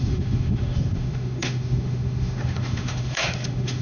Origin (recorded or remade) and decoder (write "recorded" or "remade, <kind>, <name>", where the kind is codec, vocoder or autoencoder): remade, autoencoder, DAC-VAE